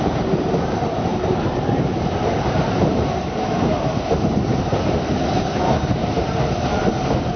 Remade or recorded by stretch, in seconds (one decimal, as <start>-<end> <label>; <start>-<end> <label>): 0.0-7.4 remade